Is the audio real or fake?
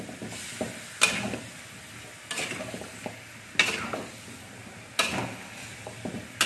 real